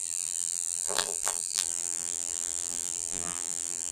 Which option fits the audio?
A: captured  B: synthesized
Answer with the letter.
B